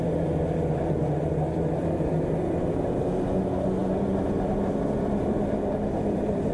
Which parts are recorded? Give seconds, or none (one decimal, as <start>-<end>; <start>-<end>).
0.0-6.5